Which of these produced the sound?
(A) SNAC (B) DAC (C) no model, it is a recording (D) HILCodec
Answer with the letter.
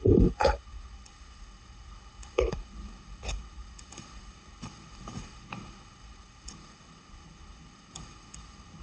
D